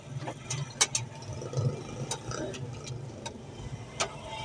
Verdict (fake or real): real